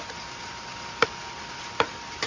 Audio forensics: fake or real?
real